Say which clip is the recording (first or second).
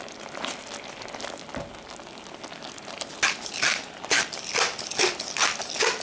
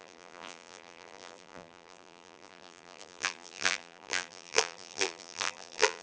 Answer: first